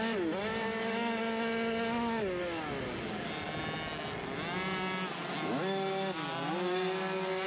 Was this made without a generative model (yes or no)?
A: yes